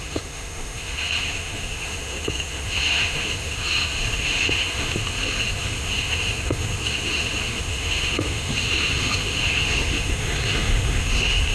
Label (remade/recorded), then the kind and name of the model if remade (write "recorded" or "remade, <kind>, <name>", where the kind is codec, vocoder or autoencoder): remade, autoencoder, DAC-VAE